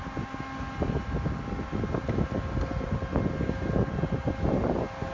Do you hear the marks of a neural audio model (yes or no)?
no